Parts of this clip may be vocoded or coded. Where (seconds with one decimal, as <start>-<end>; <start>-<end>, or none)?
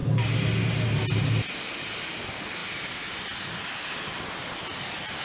none